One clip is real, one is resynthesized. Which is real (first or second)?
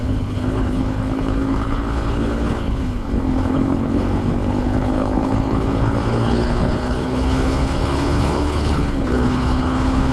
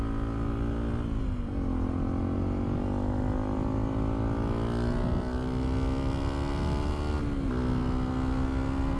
second